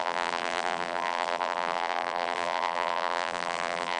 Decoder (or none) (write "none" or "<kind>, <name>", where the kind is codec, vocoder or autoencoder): vocoder, BigVGAN v2